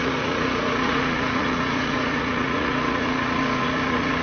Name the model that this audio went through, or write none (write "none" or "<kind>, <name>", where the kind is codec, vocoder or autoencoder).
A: vocoder, Vocos